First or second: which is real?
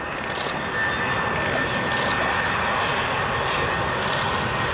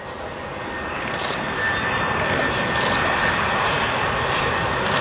first